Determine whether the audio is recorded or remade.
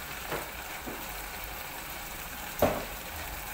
remade